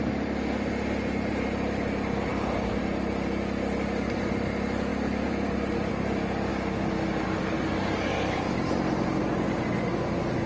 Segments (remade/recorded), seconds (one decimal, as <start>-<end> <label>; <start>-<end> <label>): 0.0-10.5 recorded